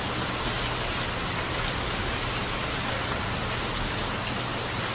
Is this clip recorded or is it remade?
recorded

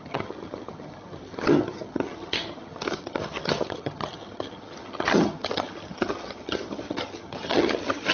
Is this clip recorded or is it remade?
remade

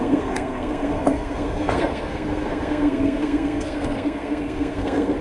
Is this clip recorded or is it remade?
remade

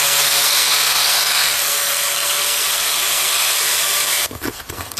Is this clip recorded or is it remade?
remade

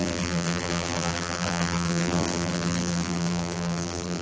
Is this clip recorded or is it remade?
remade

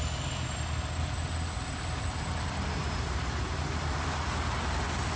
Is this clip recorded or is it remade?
recorded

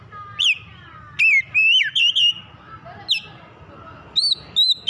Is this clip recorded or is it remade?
recorded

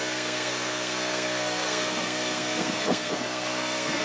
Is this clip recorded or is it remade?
remade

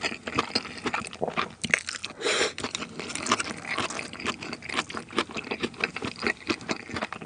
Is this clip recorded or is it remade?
recorded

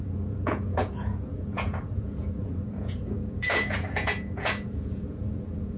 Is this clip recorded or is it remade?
remade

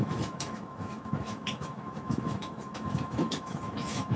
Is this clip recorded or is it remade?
remade